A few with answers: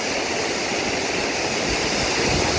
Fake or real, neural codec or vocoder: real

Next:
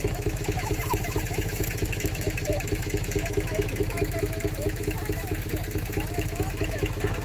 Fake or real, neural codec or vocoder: fake, autoencoder, DAC-VAE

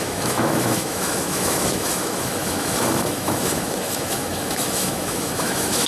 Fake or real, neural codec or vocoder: fake, autoencoder, DAC-VAE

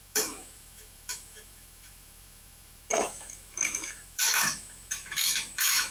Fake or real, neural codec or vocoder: fake, autoencoder, DAC-VAE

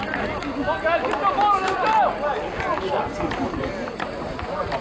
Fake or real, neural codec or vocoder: real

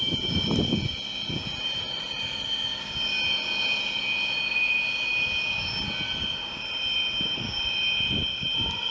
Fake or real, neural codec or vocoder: real